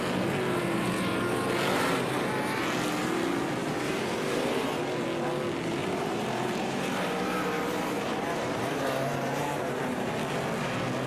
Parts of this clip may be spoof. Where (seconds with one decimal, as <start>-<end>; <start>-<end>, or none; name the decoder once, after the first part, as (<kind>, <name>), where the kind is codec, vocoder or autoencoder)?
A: 3.6-4.8 (vocoder, BigVGAN v2); 5.8-10.1